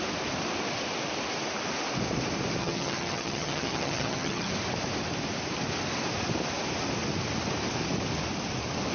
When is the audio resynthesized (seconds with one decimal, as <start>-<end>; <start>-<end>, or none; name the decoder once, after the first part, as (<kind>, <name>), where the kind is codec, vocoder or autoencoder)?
2.6-4.5 (vocoder, HiFi-GAN)